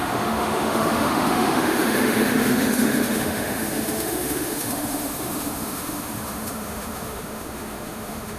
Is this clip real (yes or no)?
no